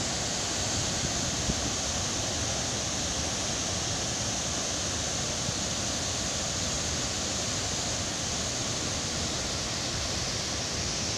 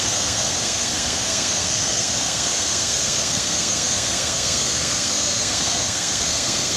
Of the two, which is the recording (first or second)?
first